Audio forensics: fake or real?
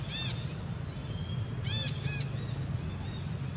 real